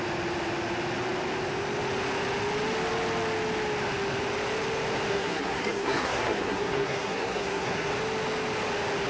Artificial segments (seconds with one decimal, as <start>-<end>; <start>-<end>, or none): 5.1-7.9

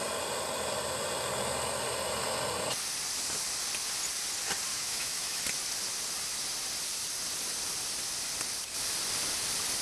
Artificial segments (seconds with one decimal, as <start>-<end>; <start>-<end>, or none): 4.7-5.4

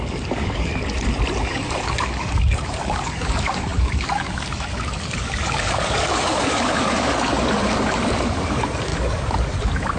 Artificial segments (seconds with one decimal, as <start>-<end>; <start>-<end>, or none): 0.0-0.7; 1.4-10.0